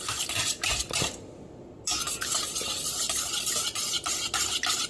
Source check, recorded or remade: recorded